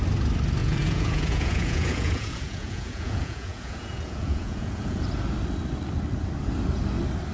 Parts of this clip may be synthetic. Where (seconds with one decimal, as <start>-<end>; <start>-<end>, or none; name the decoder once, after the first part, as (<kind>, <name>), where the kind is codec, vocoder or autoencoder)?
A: 0.6-5.0 (vocoder, Vocos)